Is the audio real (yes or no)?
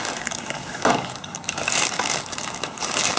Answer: no